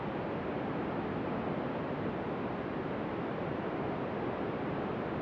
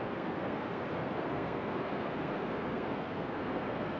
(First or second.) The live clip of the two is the first